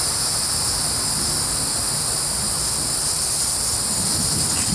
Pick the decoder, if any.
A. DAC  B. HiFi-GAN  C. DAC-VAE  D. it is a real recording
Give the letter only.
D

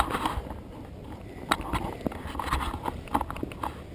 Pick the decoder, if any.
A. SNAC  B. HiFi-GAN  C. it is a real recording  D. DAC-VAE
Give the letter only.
C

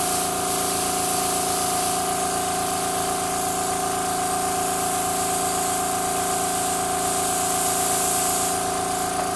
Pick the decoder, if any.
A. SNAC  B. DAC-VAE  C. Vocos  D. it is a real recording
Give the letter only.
D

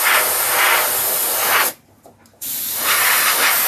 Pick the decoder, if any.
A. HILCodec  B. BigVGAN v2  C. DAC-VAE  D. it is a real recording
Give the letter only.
D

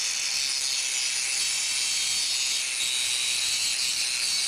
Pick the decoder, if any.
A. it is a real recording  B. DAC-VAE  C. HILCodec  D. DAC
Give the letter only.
A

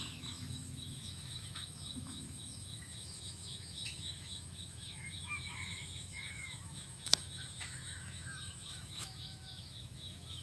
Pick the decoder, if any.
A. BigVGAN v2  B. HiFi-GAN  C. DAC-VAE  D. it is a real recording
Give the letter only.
C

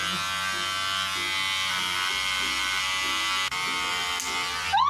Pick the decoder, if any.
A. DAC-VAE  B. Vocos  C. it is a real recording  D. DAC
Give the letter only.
C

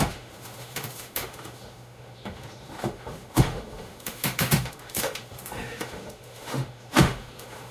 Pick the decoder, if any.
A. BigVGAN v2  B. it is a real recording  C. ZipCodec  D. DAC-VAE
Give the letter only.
D